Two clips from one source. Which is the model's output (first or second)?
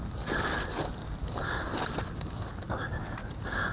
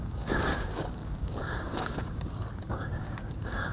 second